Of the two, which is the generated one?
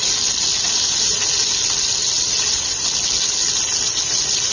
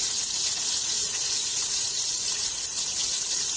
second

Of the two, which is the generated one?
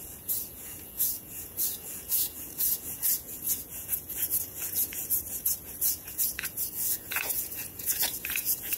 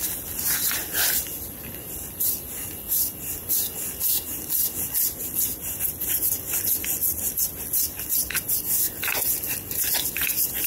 first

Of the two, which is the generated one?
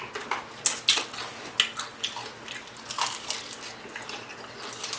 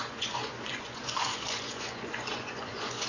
second